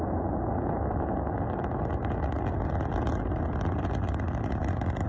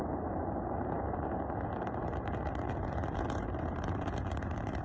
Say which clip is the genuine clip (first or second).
first